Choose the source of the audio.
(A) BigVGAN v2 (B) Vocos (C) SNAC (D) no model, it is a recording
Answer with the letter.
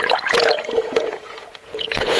B